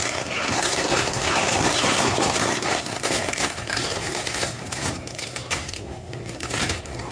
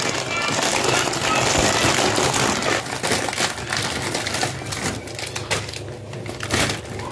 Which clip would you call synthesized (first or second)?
first